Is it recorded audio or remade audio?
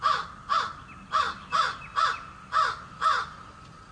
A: recorded